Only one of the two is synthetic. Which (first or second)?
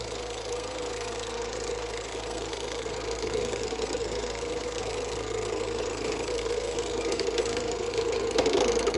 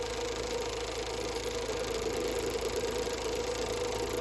first